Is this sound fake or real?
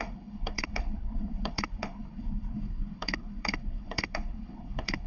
fake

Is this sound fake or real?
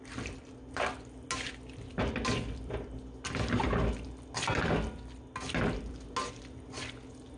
real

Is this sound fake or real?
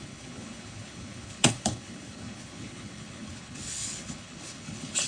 fake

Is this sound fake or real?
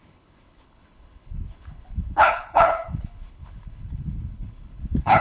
fake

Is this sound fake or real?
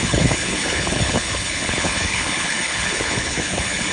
fake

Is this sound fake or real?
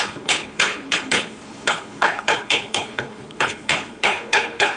fake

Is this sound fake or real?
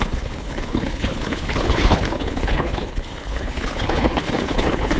fake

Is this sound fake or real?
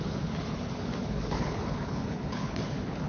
fake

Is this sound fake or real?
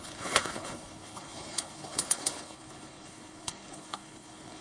fake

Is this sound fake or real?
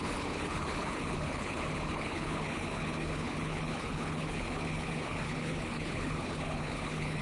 fake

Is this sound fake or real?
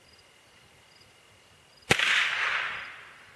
real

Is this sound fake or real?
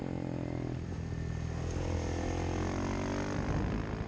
real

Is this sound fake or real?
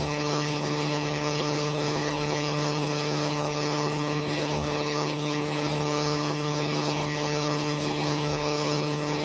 fake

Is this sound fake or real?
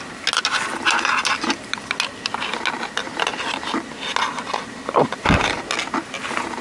real